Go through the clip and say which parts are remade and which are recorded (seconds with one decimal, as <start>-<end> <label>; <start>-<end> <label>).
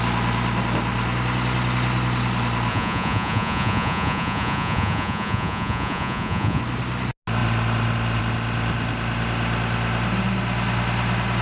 0.0-2.7 recorded; 2.7-6.6 remade; 6.6-11.4 recorded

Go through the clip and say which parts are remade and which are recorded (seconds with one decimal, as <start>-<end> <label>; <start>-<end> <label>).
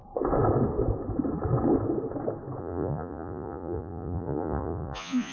0.0-2.6 recorded; 2.6-5.3 remade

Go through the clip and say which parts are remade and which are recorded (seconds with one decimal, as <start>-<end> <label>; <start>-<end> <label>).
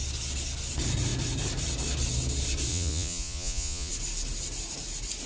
0.0-2.7 recorded; 2.7-3.9 remade; 3.9-5.3 recorded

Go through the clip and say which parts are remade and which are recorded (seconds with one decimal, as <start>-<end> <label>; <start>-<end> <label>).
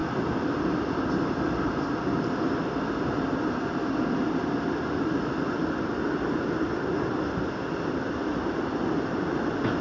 0.0-9.8 recorded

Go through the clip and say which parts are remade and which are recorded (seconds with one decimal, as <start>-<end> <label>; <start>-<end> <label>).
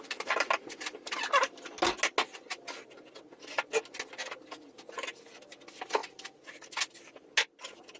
0.0-8.0 recorded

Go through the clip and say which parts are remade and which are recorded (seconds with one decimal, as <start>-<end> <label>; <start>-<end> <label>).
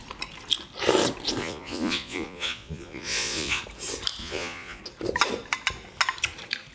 0.0-1.4 recorded; 1.4-3.6 remade; 3.6-4.2 recorded; 4.2-4.8 remade; 4.8-6.7 recorded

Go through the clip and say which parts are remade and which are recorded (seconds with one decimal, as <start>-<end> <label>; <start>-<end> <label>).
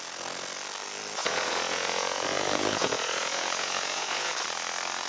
0.0-1.2 recorded; 1.2-4.3 remade; 4.3-5.1 recorded